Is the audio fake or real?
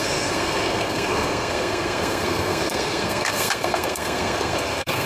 fake